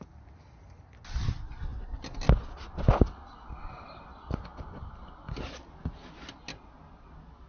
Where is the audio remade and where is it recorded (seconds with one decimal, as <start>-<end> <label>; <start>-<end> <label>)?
0.0-7.5 recorded